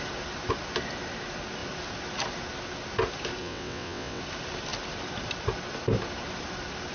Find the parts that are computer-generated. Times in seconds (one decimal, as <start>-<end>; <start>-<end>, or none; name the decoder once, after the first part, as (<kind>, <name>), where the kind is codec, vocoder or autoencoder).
3.4-4.2 (vocoder, WaveNeXt)